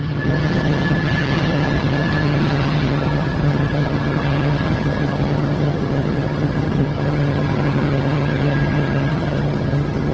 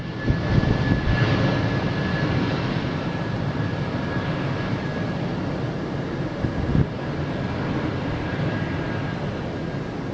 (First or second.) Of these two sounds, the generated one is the first